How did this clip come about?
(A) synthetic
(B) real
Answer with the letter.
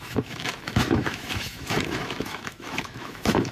A